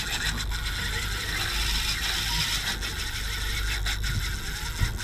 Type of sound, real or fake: real